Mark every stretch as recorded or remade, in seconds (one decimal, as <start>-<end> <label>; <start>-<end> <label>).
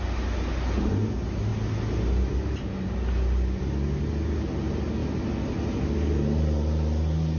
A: 0.0-7.4 recorded